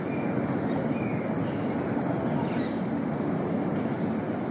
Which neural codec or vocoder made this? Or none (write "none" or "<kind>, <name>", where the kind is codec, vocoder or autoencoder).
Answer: none